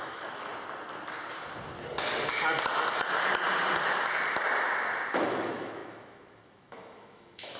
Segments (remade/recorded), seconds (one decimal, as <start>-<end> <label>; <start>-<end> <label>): 0.0-0.5 remade; 0.5-5.1 recorded; 5.1-7.6 remade